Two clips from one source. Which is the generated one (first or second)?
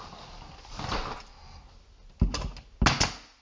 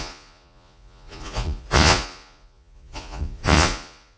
second